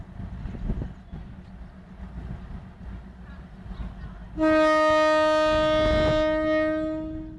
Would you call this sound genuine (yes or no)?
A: yes